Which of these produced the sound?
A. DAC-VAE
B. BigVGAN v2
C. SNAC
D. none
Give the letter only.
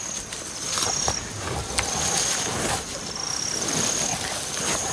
D